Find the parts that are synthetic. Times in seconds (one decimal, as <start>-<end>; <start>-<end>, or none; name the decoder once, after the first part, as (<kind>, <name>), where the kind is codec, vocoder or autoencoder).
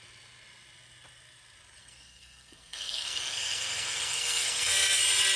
1.8-5.0 (codec, SNAC)